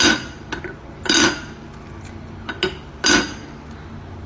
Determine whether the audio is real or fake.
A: real